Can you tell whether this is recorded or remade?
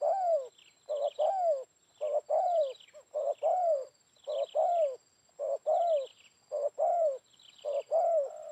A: recorded